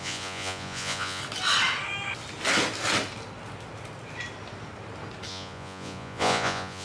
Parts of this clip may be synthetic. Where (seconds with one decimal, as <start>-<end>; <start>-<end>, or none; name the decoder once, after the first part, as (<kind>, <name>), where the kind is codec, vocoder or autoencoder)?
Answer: 0.0-1.2 (vocoder, Vocos); 5.3-6.8